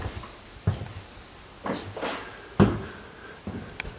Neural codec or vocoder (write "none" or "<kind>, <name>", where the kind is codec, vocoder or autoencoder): none